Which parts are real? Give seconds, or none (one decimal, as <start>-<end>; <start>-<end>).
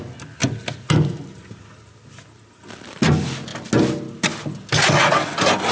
0.0-5.7